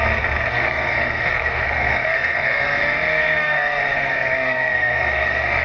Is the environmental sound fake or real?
fake